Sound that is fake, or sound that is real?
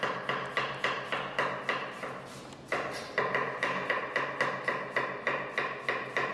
real